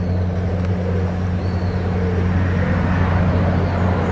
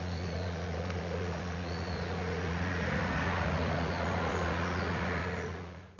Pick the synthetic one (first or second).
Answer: second